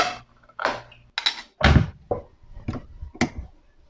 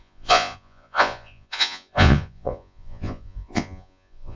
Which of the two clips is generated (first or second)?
second